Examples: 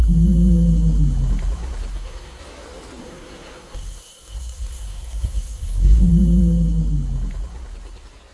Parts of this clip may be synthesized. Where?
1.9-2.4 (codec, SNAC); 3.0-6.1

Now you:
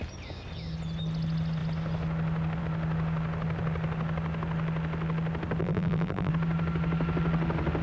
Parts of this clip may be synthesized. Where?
5.6-6.3 (vocoder, BigVGAN v2)

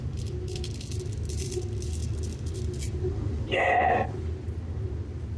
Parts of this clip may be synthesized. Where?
none

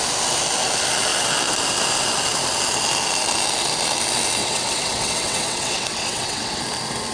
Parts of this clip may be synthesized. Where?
4.4-6.6 (vocoder, WaveNeXt)

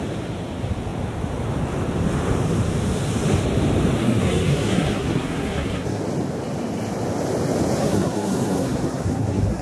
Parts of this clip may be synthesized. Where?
4.0-6.0 (codec, SNAC); 7.8-9.6

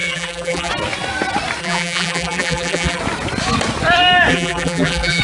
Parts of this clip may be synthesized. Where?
0.0-0.7 (vocoder, BigVGAN v2); 1.6-3.0; 4.3-5.2

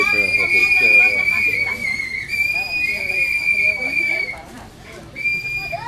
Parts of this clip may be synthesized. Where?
0.6-1.7 (vocoder, BigVGAN v2); 2.3-5.0

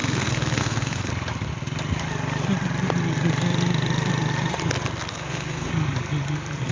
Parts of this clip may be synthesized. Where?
0.0-1.1 (codec, SNAC); 5.1-5.7